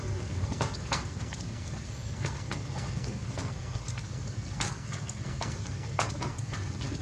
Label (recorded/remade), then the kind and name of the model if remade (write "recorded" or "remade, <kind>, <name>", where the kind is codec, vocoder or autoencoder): remade, codec, SNAC